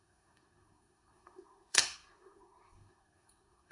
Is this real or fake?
fake